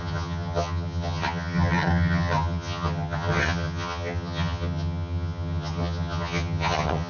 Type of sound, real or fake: fake